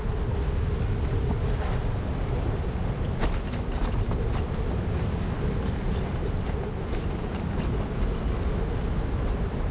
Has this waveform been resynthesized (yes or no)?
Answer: no